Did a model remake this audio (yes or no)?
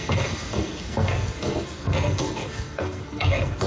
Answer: yes